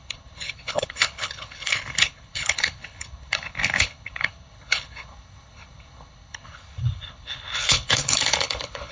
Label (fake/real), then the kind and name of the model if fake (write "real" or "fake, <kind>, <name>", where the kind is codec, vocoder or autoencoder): fake, codec, HILCodec